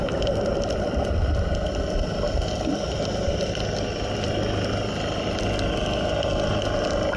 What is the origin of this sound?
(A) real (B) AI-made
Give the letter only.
A